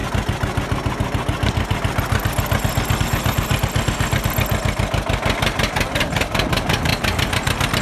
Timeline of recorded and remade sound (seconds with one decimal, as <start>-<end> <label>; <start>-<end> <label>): 0.0-3.0 recorded; 3.0-3.5 remade; 3.5-5.7 recorded; 5.7-7.8 remade